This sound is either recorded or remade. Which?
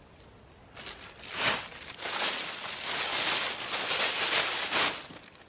recorded